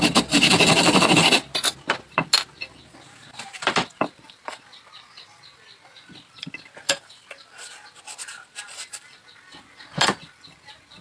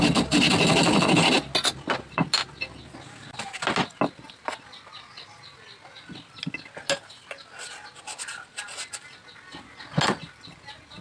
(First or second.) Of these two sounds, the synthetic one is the first